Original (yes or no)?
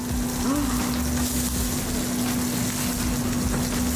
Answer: yes